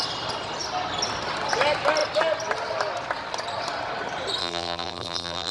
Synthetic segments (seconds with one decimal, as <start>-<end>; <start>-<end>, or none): 4.4-5.5